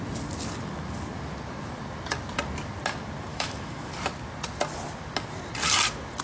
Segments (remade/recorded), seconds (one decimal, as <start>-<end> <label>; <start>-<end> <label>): 0.0-3.3 recorded; 3.3-3.9 remade; 3.9-6.2 recorded